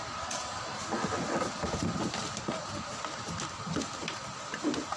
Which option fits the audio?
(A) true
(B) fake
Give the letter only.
A